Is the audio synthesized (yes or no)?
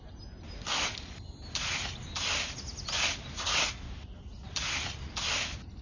no